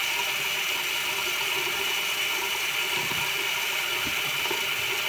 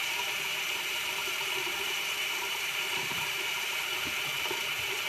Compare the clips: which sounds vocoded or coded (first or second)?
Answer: second